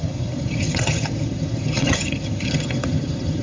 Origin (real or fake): fake